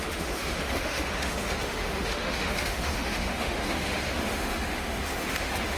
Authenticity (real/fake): fake